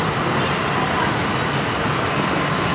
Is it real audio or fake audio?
real